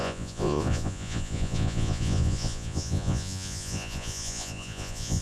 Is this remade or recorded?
remade